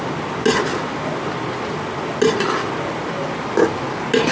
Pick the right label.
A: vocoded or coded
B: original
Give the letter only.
B